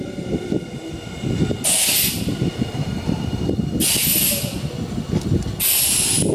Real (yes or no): yes